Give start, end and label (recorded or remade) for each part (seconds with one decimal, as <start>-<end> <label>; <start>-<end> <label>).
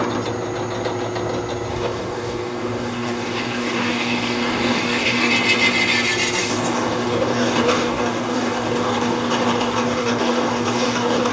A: 0.0-1.7 recorded; 1.7-5.3 remade; 5.3-6.4 recorded; 6.4-11.3 remade